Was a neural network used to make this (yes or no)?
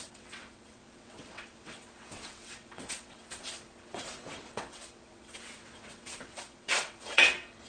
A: yes